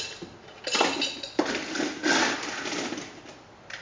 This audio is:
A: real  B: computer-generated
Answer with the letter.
A